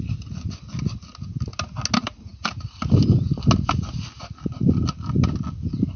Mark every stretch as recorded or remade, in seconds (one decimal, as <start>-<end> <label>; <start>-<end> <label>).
0.0-6.0 recorded